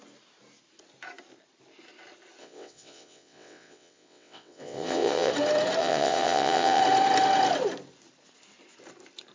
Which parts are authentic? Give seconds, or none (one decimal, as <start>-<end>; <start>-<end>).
0.0-2.4; 5.3-5.8; 6.8-9.3